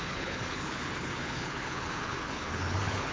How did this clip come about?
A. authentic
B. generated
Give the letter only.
B